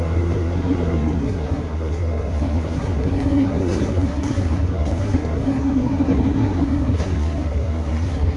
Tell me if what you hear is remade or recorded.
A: remade